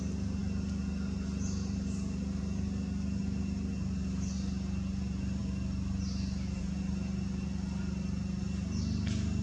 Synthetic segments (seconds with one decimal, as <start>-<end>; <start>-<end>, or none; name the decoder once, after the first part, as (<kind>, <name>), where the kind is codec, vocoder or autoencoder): none